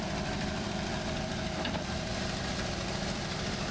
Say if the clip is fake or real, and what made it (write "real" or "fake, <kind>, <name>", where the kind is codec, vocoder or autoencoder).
fake, vocoder, BigVGAN v2